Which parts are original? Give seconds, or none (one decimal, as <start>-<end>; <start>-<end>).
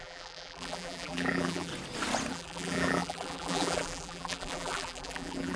1.7-2.3